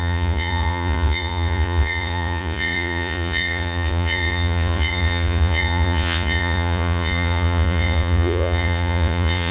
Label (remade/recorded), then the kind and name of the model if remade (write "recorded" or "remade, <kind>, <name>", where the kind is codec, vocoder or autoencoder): remade, vocoder, Vocos